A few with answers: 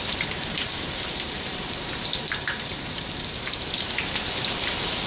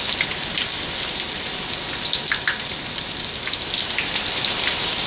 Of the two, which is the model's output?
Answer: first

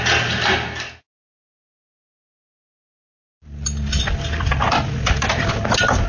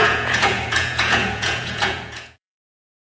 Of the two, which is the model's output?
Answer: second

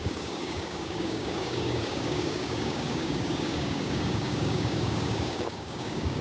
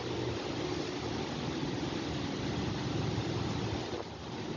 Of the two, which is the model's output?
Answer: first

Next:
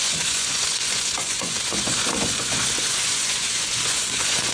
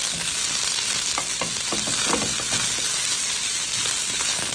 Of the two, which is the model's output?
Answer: first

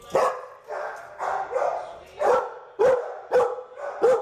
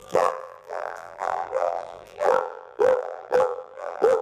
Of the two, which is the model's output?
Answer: second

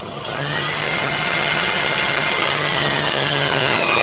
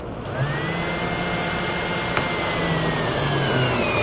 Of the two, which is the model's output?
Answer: first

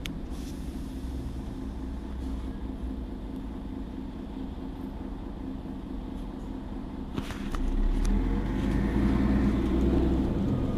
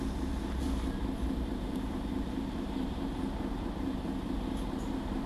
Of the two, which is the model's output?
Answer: second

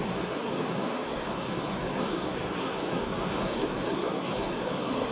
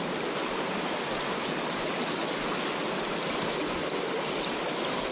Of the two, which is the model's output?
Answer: first